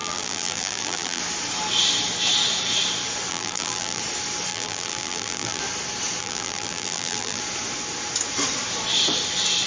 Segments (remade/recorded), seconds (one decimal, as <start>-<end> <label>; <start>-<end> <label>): 0.0-1.2 remade; 1.2-3.3 recorded; 3.3-4.0 remade; 4.0-4.5 recorded; 4.5-5.6 remade; 5.6-6.2 recorded; 6.2-7.4 remade; 7.4-9.7 recorded

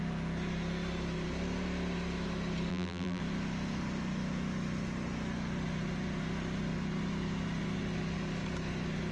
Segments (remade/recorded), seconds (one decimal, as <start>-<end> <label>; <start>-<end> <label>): 0.0-2.7 recorded; 2.7-3.2 remade; 3.2-9.1 recorded

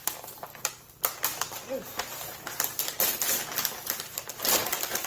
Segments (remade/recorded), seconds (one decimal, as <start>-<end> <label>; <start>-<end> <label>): 0.0-0.7 remade; 0.7-5.1 recorded

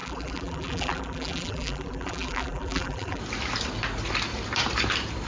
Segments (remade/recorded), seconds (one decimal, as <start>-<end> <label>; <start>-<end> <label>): 0.0-3.2 remade; 3.2-5.3 recorded

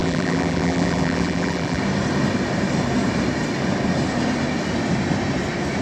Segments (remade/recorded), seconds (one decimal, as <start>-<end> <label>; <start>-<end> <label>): 0.0-1.8 remade; 1.8-5.8 recorded

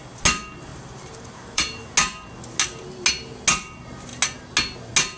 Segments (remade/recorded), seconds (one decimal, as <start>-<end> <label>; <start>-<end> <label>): 0.0-0.7 recorded; 0.7-1.9 remade; 1.9-5.2 recorded

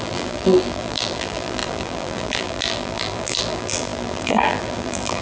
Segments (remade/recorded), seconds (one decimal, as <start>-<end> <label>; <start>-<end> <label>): 0.0-5.2 remade